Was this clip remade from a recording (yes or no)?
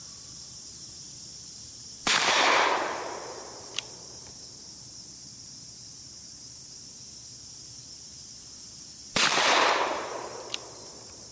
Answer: yes